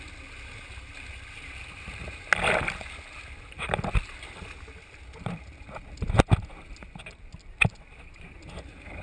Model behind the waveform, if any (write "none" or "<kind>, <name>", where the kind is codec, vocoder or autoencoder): none